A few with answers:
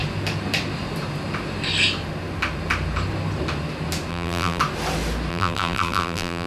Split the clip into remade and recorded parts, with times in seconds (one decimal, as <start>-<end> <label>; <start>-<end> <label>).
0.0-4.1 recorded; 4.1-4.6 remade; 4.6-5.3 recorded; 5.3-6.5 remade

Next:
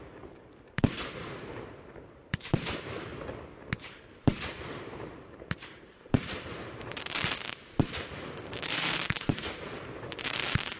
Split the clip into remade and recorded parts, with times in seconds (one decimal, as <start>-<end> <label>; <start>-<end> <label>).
0.0-3.1 remade; 3.1-4.2 recorded; 4.2-10.8 remade

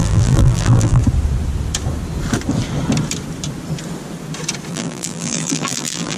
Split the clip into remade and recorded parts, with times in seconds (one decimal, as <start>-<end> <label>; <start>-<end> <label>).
0.0-1.0 remade; 1.0-4.7 recorded; 4.7-6.2 remade

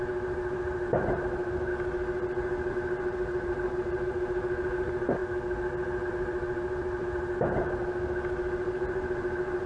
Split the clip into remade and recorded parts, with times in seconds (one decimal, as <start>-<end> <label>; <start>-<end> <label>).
0.0-1.7 remade; 1.7-2.7 recorded; 2.7-5.2 remade; 5.2-6.1 recorded; 6.1-7.8 remade; 7.8-8.5 recorded; 8.5-9.7 remade

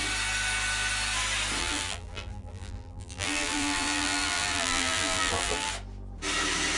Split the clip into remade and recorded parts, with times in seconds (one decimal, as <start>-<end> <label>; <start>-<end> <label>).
0.0-1.6 recorded; 1.6-5.7 remade; 5.7-6.8 recorded

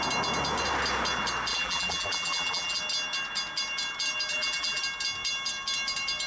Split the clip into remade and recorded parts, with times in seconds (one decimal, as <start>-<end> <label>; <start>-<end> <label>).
0.0-1.5 recorded; 1.5-2.8 remade; 2.8-4.3 recorded; 4.3-4.8 remade; 4.8-6.3 recorded